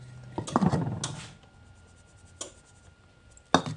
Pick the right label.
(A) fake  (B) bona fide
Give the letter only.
B